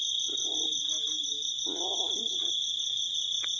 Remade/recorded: recorded